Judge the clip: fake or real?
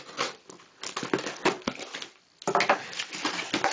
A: real